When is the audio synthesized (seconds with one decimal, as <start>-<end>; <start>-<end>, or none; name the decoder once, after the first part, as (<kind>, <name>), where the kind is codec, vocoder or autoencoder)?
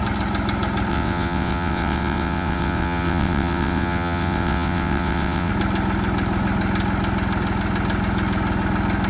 0.9-5.5 (vocoder, WaveNeXt)